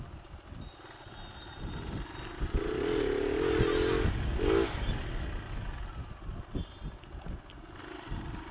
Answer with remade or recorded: recorded